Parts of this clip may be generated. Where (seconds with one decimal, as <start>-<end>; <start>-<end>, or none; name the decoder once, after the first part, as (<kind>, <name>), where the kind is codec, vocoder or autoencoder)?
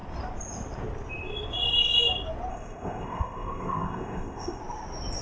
2.5-4.6 (codec, ZipCodec)